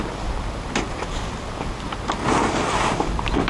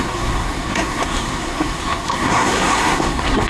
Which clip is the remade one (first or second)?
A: second